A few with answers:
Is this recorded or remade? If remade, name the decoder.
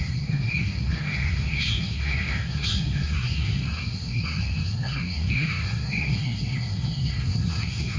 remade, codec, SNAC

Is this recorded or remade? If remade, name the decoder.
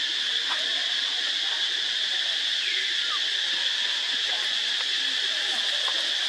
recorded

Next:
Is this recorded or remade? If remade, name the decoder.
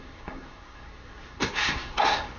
remade, codec, SNAC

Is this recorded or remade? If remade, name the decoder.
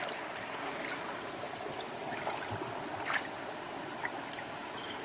recorded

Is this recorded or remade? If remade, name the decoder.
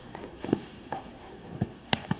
remade, codec, SNAC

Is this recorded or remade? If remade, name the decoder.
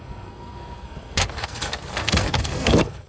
remade, codec, SNAC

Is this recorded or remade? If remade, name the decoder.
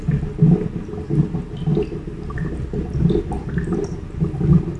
recorded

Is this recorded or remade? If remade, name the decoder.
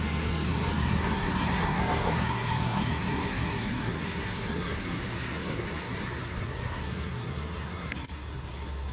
remade, codec, SNAC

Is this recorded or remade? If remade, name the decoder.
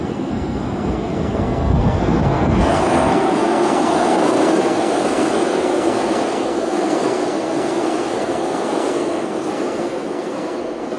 remade, codec, SNAC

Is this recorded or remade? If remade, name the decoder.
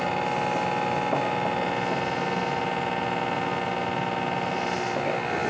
recorded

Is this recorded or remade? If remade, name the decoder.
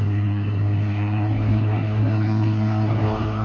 remade, codec, SNAC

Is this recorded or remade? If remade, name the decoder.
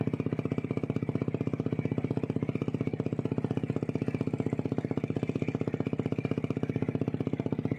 recorded